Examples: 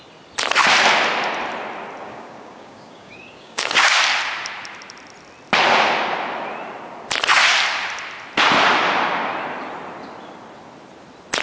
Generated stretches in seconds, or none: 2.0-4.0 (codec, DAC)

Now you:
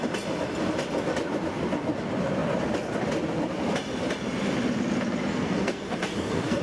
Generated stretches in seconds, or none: 5.3-6.6 (codec, SNAC)

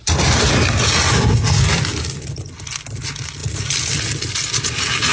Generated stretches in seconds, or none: none

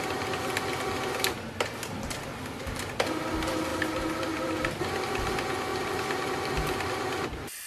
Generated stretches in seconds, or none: 3.7-5.0 (vocoder, BigVGAN v2)

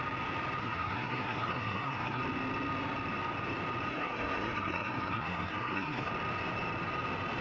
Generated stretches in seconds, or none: 0.6-2.2 (codec, SNAC); 3.9-6.1

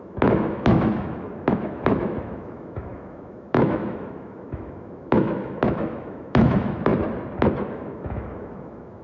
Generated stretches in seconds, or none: 0.0-6.9 (autoencoder, DAC-VAE); 7.7-9.0

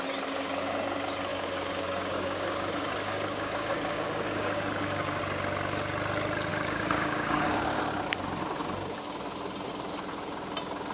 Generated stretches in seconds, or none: 1.3-5.2 (codec, DAC); 6.5-7.8

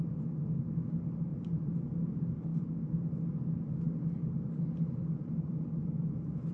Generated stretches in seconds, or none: none